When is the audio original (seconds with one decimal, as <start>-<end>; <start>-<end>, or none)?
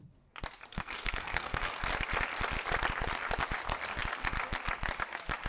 0.0-0.7; 1.7-5.5